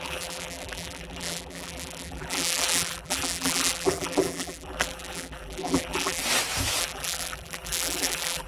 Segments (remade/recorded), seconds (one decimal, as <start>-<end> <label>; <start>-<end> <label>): 0.0-6.2 remade; 6.2-6.8 recorded; 6.8-8.5 remade